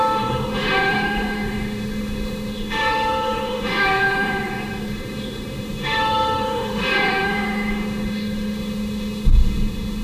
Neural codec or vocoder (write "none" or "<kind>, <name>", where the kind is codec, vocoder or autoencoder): autoencoder, DAC-VAE